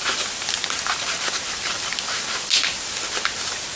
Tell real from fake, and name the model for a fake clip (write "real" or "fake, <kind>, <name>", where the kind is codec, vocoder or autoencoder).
real